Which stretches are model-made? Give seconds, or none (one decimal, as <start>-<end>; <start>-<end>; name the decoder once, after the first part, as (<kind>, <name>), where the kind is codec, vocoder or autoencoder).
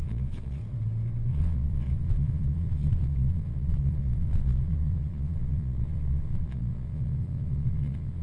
0.0-0.6 (vocoder, Vocos); 1.3-8.2